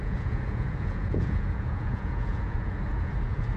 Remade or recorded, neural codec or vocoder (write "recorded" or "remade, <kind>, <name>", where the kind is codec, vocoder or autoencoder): remade, vocoder, Vocos